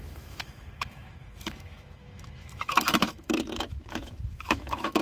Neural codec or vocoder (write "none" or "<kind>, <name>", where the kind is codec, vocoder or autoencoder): autoencoder, DAC-VAE